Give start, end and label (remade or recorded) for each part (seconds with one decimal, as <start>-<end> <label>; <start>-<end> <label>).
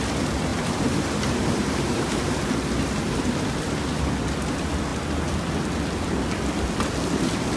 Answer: 0.0-0.5 recorded; 0.5-2.4 remade; 2.4-7.6 recorded